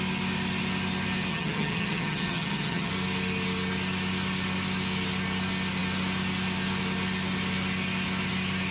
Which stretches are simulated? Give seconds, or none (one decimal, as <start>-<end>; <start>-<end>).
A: 1.3-2.9